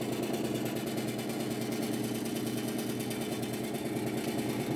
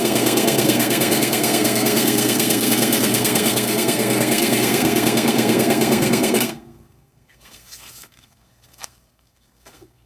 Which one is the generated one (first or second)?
second